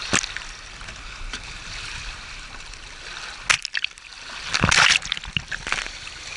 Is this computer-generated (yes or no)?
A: no